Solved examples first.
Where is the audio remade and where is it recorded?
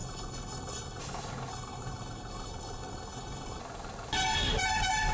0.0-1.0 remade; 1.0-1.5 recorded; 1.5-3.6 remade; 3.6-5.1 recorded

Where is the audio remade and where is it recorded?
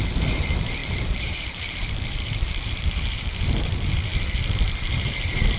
0.0-4.1 remade; 4.1-4.8 recorded; 4.8-5.6 remade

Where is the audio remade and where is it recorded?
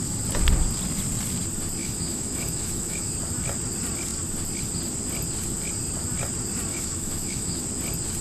0.0-1.8 recorded; 1.8-3.1 remade; 3.1-6.7 recorded; 6.7-7.6 remade; 7.6-8.2 recorded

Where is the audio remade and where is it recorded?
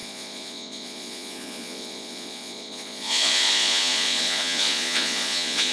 0.0-5.7 remade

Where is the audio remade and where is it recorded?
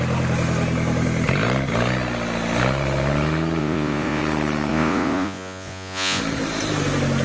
0.0-3.6 recorded; 3.6-4.2 remade; 4.2-4.7 recorded; 4.7-6.2 remade; 6.2-7.2 recorded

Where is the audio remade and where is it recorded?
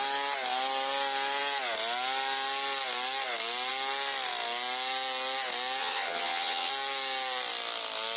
0.0-5.8 recorded; 5.8-6.7 remade; 6.7-8.2 recorded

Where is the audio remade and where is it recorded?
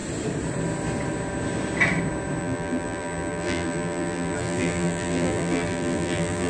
0.0-2.4 recorded; 2.4-6.5 remade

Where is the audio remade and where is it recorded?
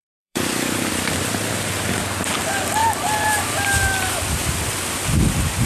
0.0-0.9 remade; 0.9-5.7 recorded